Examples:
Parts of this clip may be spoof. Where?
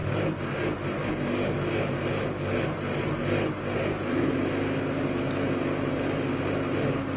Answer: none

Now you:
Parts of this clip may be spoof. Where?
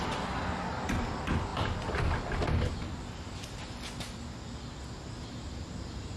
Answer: none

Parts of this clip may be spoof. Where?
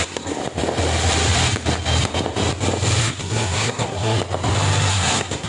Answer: 0.0-0.4; 3.0-4.2; 4.9-5.5